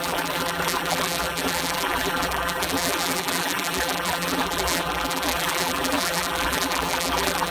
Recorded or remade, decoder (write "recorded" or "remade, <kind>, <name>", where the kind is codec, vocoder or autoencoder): remade, vocoder, BigVGAN v2